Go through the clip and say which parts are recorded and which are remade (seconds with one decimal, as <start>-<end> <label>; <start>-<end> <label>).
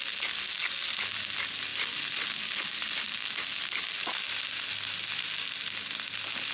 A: 0.0-6.5 recorded